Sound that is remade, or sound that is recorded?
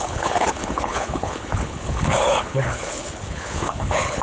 remade